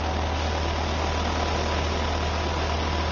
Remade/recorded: recorded